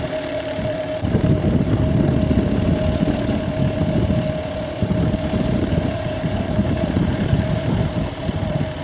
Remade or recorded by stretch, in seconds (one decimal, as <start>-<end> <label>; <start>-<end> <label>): 0.0-2.1 remade; 2.1-5.6 recorded; 5.6-8.8 remade